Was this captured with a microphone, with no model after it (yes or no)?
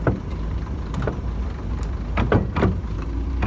yes